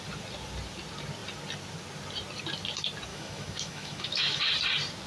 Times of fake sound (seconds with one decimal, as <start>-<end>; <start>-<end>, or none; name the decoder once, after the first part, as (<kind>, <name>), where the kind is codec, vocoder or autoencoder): 3.1-4.4 (autoencoder, DAC-VAE)